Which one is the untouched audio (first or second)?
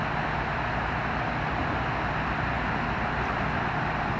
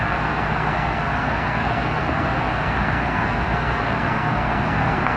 first